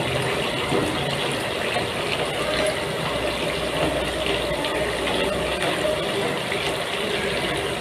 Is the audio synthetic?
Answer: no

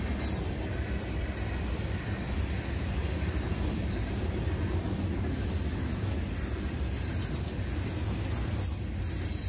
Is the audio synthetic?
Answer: no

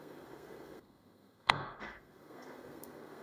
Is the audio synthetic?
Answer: yes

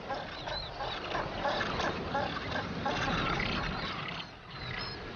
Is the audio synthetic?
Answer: no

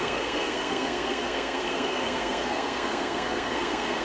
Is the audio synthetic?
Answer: yes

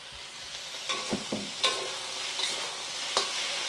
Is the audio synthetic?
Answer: no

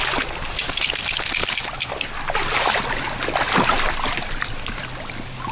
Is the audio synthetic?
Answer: no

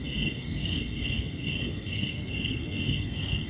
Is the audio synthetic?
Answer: yes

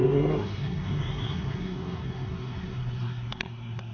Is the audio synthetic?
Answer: yes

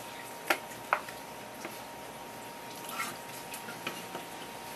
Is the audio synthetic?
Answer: no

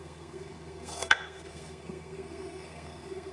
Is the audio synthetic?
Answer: yes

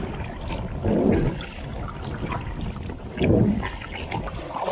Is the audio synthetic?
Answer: no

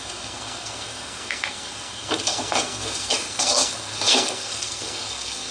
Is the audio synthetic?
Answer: yes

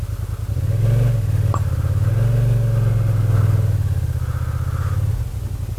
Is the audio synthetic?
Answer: no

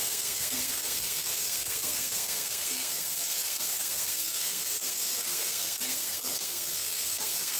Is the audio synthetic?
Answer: yes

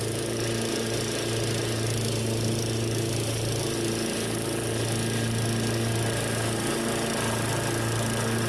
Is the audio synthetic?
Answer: no